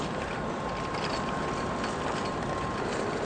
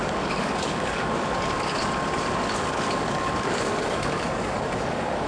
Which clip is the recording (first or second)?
first